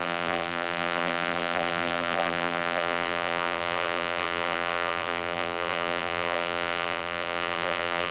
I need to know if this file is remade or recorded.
remade